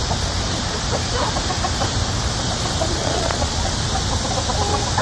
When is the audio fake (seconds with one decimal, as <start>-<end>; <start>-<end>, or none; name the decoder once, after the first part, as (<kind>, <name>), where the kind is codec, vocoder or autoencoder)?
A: 3.0-3.7 (vocoder, Vocos)